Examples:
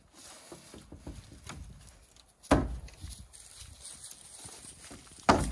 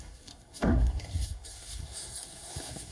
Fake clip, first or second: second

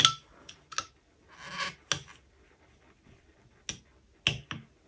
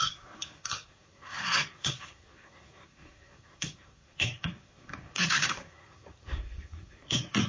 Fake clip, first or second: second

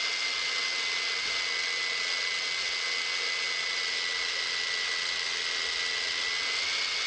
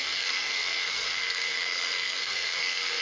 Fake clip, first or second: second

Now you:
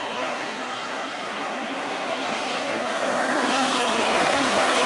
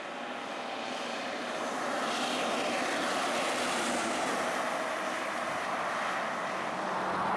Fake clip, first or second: first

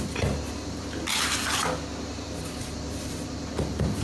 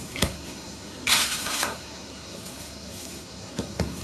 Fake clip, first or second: second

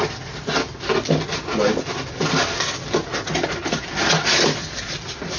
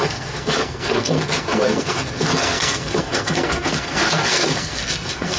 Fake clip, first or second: second